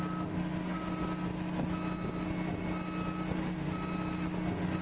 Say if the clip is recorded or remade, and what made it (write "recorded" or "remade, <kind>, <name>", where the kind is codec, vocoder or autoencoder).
recorded